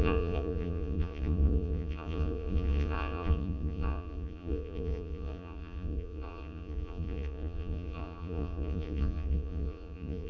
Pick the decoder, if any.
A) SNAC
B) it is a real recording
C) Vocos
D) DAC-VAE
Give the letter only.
C